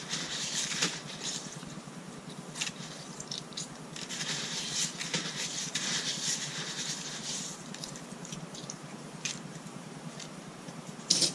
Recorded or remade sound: remade